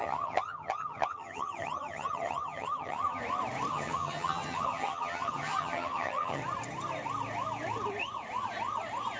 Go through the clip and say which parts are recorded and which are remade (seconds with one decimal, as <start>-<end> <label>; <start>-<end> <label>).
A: 0.0-3.2 remade; 3.2-3.7 recorded; 3.7-6.4 remade; 6.4-9.2 recorded